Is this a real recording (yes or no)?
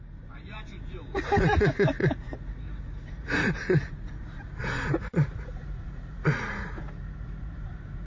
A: no